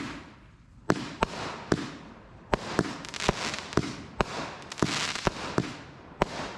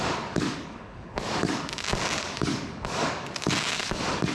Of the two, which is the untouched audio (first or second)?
first